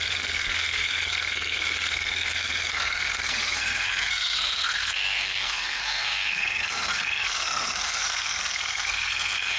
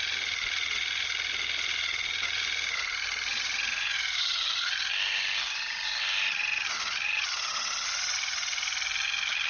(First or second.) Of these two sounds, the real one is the second